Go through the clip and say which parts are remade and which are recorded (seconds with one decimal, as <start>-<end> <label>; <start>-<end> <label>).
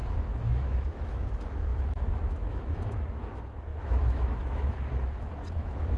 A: 0.0-6.0 remade